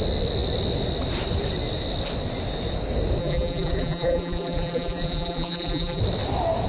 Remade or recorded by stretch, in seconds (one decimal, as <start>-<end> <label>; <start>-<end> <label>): 0.0-3.2 recorded; 3.2-6.0 remade; 6.0-6.7 recorded